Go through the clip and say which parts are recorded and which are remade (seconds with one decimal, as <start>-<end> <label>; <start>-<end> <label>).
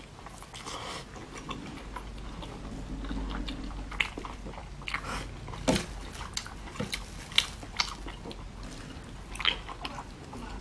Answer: 0.0-10.6 recorded